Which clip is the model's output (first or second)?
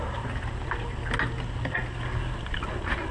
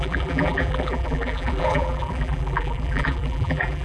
second